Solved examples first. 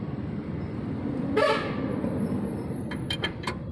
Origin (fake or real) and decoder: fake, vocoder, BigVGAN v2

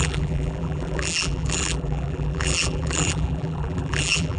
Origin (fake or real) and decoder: fake, vocoder, BigVGAN v2